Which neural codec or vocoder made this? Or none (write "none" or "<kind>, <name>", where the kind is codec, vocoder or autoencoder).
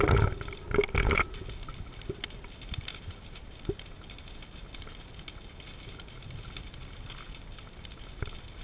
none